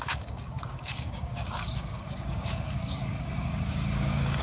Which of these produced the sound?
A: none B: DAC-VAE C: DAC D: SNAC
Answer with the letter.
C